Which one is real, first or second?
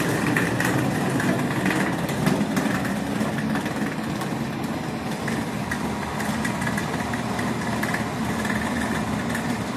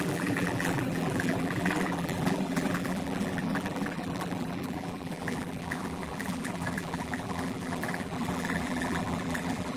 first